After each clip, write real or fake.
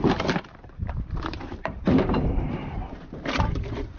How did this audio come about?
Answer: fake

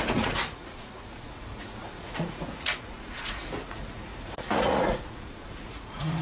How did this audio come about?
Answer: fake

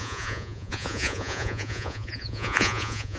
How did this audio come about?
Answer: fake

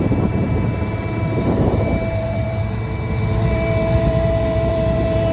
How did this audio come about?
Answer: fake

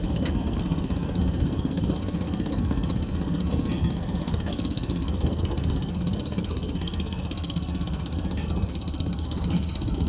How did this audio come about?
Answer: fake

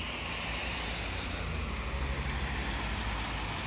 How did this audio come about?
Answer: real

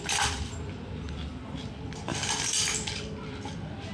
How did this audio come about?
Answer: real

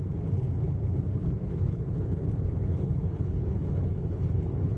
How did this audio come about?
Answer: fake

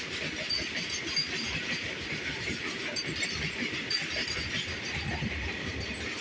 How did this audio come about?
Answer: real